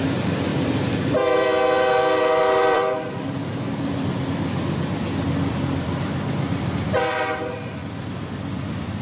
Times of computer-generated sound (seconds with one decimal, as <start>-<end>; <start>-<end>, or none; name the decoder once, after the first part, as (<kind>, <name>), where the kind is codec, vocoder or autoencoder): 0.0-7.8 (vocoder, BigVGAN v2); 8.3-9.0